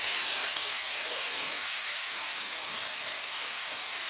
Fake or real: fake